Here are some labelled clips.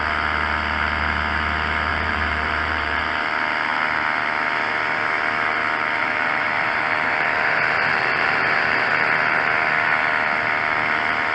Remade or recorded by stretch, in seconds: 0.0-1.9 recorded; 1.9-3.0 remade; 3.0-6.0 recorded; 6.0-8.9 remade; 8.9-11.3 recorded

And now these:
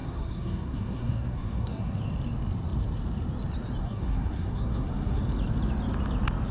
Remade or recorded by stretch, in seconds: 0.0-2.0 remade; 2.0-3.8 recorded; 3.8-5.2 remade; 5.2-6.5 recorded

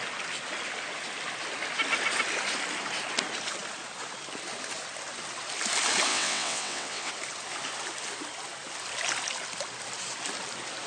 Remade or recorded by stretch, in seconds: 0.0-6.1 recorded; 6.1-7.1 remade; 7.1-10.9 recorded

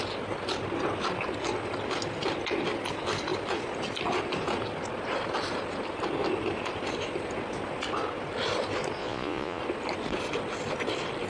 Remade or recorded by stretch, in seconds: 0.0-9.0 recorded; 9.0-9.6 remade; 9.6-11.3 recorded